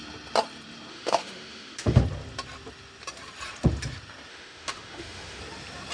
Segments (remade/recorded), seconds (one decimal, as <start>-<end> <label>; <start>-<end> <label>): 0.0-0.9 recorded; 0.9-2.0 remade; 2.0-4.3 recorded; 4.3-5.4 remade; 5.4-5.9 recorded